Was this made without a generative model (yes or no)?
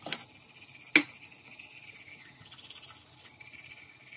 yes